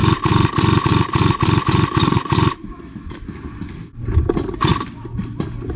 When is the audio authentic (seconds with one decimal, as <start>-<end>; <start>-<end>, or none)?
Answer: 0.0-5.8